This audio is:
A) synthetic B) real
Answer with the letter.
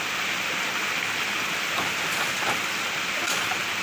B